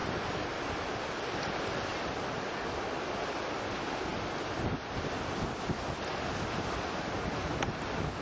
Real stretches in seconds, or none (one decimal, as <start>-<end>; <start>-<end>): 0.0-8.2

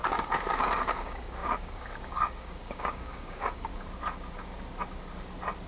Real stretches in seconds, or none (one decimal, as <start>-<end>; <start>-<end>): 3.7-5.7

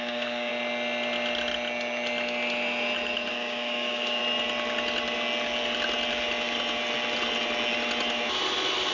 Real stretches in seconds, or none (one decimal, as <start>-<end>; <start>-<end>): 0.5-3.3; 4.2-8.9

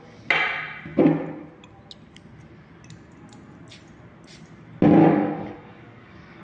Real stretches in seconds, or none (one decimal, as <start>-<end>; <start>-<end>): 0.0-5.0

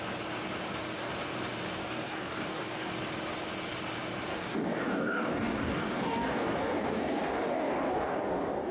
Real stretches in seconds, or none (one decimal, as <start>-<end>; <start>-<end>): 0.0-1.8; 2.9-4.3

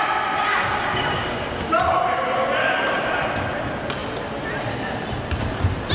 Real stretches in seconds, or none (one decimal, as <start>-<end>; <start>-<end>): 0.0-0.5; 1.6-2.6; 3.1-5.9